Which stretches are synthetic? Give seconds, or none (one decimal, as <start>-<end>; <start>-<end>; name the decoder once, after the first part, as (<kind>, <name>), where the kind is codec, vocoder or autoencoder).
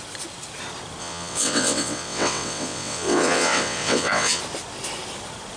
1.0-4.4 (vocoder, WaveNeXt)